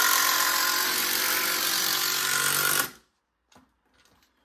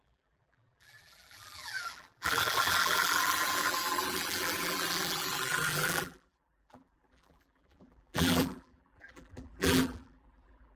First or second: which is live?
first